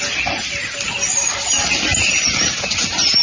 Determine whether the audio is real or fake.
real